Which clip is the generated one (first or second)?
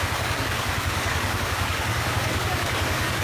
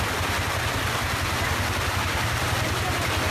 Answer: first